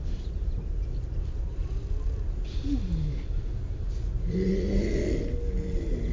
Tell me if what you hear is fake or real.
real